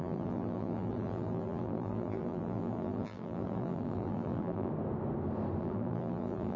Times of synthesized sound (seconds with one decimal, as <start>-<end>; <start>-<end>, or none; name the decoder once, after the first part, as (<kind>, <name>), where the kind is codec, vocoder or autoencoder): 0.0-4.7 (vocoder, BigVGAN v2); 5.6-6.6